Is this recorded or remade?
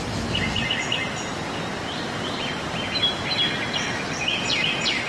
recorded